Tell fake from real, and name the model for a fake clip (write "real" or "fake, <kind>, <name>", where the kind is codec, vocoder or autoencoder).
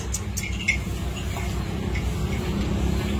real